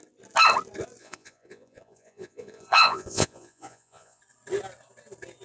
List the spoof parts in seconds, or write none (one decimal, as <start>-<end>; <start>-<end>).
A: 1.0-4.2